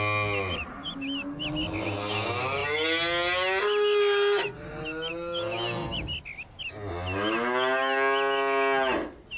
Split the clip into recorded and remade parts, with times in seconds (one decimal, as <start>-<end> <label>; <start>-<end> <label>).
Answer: 0.0-9.4 recorded